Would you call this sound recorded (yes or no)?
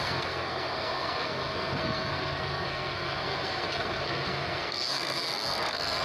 no